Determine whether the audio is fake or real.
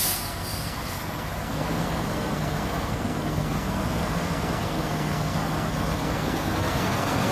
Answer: fake